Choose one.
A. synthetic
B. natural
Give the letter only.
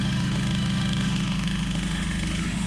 A